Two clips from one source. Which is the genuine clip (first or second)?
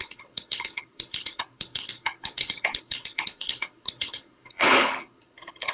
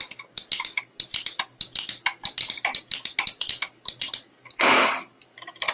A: second